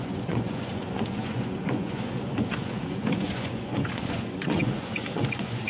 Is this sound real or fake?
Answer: fake